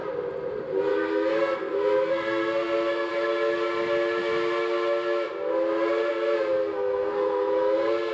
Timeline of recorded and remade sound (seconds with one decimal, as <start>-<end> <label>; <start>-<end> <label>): 0.0-0.9 recorded; 0.9-3.1 remade; 3.1-6.1 recorded; 6.1-8.1 remade